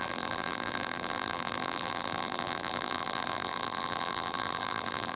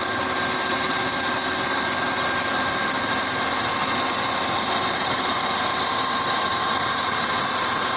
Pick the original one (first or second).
second